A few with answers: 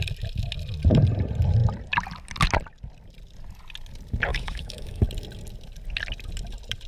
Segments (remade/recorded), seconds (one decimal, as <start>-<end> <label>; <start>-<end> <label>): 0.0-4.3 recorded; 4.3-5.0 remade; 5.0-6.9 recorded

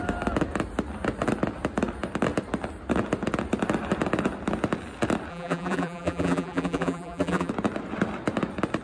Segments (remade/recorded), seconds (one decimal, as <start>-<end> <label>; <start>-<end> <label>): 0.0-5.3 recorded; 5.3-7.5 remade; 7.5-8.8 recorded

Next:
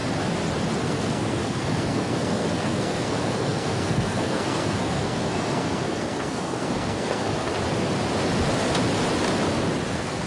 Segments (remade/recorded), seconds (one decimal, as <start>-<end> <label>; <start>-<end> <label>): 0.0-0.8 recorded; 0.8-7.5 remade; 7.5-9.9 recorded; 9.9-10.3 remade